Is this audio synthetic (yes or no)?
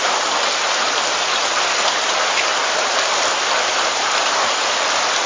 no